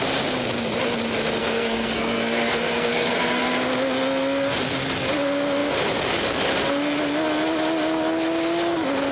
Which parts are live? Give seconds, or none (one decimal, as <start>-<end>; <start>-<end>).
0.0-1.4; 3.4-9.1